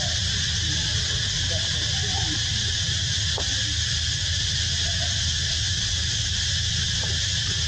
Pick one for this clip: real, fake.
fake